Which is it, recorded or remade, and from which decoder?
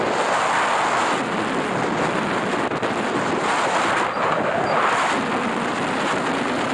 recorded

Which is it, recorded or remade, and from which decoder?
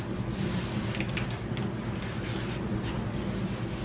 recorded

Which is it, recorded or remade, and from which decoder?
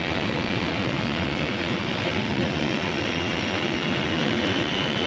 remade, vocoder, WaveNeXt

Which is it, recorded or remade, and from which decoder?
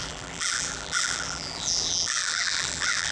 remade, vocoder, BigVGAN v2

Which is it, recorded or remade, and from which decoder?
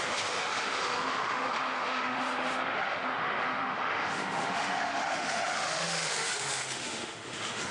remade, autoencoder, DAC-VAE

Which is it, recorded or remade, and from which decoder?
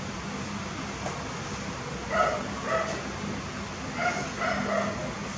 recorded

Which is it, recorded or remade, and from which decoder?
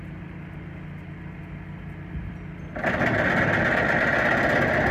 recorded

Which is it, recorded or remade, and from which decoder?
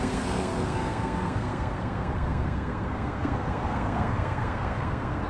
remade, codec, SNAC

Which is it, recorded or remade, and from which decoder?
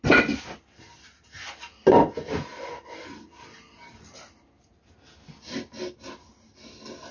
recorded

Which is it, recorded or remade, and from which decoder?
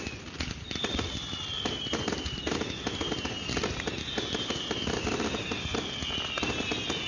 recorded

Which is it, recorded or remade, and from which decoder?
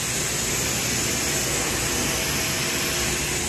recorded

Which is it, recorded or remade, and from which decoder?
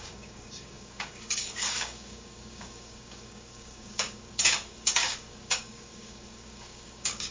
remade, codec, DAC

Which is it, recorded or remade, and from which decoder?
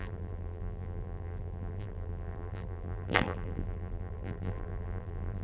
remade, vocoder, BigVGAN v2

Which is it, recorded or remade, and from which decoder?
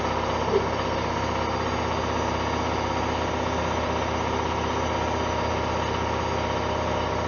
recorded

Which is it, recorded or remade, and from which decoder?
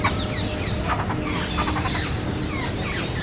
recorded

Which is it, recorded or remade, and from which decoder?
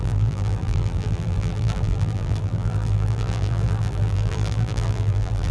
remade, vocoder, BigVGAN v2